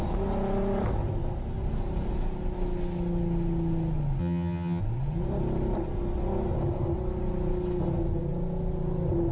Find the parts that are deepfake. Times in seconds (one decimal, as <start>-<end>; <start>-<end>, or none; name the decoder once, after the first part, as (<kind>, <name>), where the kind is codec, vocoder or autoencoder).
4.2-4.8 (vocoder, HiFi-GAN)

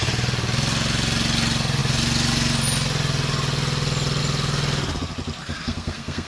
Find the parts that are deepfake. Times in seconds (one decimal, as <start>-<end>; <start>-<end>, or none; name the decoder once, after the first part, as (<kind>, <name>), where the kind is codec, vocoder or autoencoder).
5.4-6.3 (codec, SNAC)

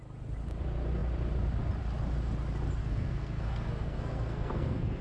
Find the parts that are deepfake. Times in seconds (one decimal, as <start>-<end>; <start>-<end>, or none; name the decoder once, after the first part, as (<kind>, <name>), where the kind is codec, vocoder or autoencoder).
2.8-5.0 (codec, SNAC)

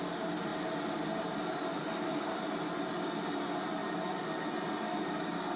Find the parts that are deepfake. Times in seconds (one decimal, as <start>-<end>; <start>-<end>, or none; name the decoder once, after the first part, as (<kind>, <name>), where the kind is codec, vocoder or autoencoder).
none

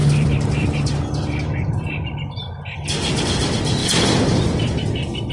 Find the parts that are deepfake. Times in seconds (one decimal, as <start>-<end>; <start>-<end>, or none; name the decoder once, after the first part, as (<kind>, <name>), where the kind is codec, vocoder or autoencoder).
0.0-3.8 (vocoder, BigVGAN v2)

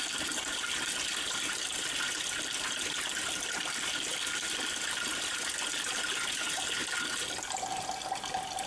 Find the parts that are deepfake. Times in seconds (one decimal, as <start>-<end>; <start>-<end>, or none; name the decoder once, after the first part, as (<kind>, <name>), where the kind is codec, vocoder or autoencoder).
none

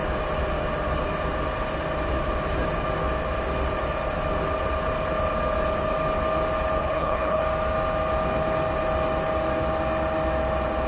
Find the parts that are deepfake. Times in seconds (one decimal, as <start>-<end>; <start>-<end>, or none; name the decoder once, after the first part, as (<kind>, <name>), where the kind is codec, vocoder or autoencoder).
6.8-7.4 (codec, HILCodec)

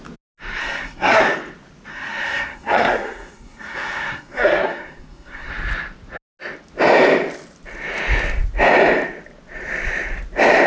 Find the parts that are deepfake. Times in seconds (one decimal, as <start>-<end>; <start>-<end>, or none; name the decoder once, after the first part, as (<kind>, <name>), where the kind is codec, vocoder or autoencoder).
0.6-1.2 (codec, SNAC); 1.9-5.5